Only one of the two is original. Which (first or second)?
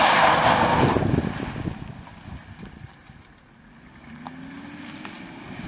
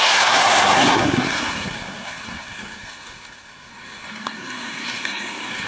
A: first